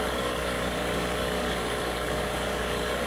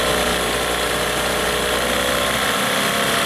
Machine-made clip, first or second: first